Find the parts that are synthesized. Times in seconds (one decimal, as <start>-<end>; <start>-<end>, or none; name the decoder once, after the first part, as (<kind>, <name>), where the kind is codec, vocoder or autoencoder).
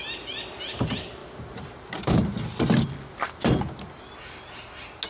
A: none